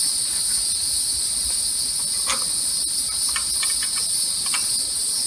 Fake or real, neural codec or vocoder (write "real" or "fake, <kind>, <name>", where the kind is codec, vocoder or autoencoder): real